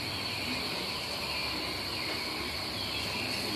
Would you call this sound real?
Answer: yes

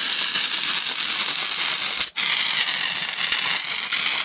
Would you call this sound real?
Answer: yes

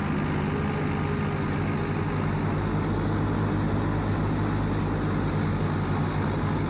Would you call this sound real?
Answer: yes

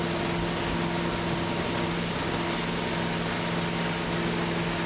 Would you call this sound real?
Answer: yes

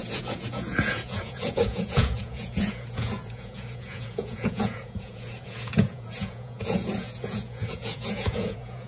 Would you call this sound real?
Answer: no